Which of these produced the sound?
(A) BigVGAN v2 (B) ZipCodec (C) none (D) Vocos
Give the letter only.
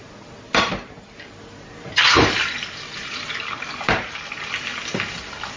C